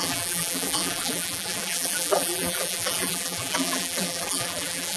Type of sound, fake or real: fake